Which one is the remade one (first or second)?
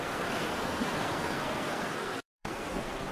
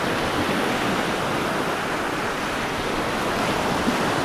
first